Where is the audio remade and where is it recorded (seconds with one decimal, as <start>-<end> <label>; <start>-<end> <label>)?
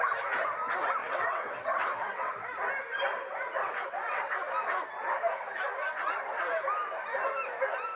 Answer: 0.0-1.0 recorded; 1.0-2.3 remade; 2.3-3.6 recorded; 3.6-4.2 remade; 4.2-8.0 recorded